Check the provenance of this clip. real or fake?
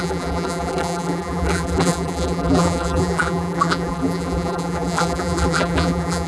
fake